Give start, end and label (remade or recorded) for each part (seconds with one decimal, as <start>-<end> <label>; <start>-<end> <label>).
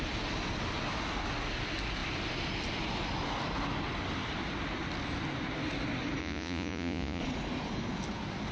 0.0-6.2 recorded; 6.2-7.2 remade; 7.2-8.5 recorded